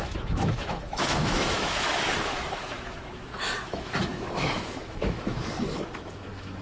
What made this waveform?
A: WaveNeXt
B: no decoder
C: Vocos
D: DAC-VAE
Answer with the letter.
D